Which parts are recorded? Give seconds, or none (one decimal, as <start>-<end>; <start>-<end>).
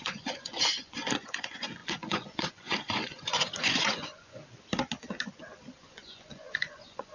4.4-5.8